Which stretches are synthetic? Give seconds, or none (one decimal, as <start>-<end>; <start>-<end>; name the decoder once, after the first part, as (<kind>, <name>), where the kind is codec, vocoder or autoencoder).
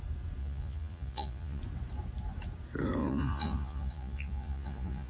0.4-1.6 (vocoder, Vocos); 3.0-5.1